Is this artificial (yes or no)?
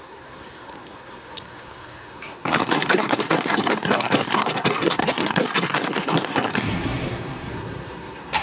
yes